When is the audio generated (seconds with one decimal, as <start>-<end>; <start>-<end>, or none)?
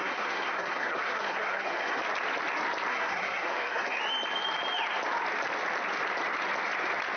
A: 0.0-2.0; 2.9-4.0